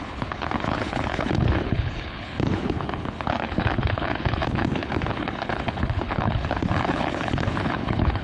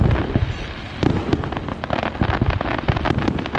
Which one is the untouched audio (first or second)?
second